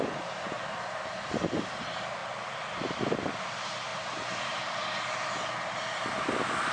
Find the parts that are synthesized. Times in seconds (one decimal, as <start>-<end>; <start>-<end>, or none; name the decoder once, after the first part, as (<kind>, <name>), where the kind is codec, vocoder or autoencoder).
3.9-5.5 (vocoder, BigVGAN v2)